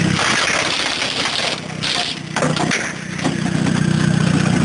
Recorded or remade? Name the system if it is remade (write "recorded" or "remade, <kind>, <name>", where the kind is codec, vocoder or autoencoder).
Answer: recorded